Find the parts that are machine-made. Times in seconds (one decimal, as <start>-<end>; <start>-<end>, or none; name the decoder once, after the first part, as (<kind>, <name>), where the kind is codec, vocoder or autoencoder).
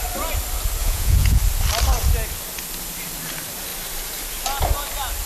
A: 0.8-1.4 (vocoder, Vocos)